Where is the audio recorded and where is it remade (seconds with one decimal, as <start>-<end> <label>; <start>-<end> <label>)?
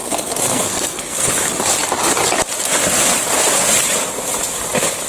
0.0-1.3 remade; 1.3-5.1 recorded